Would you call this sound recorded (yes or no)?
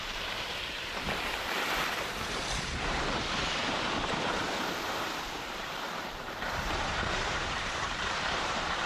no